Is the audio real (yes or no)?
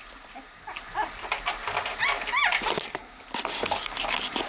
yes